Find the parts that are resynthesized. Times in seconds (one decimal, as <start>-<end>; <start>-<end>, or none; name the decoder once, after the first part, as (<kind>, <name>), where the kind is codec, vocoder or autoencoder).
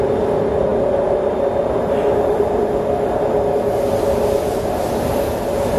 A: none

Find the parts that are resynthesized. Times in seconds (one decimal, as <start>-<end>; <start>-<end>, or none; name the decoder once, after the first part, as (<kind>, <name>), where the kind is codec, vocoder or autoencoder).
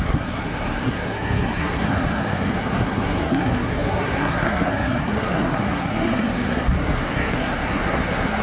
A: 0.0-8.4 (codec, SNAC)